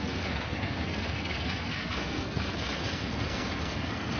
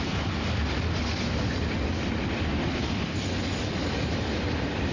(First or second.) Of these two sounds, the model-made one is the first